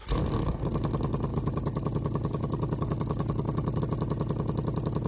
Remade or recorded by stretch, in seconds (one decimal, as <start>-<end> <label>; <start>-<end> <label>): 0.0-1.3 recorded; 1.3-3.8 remade; 3.8-5.1 recorded